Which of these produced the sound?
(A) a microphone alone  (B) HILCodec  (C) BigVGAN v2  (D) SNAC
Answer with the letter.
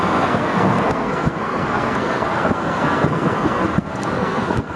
D